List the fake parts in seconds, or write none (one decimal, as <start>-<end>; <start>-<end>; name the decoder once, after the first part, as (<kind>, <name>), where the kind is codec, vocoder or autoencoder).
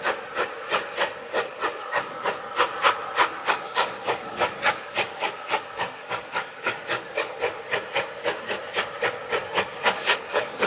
1.8-2.3 (codec, DAC); 3.4-7.3; 9.4-10.7